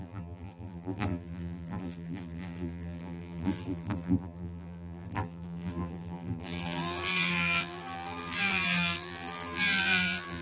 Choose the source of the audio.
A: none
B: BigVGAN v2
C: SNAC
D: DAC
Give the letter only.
B